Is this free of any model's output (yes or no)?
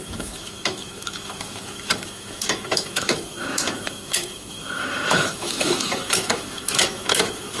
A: no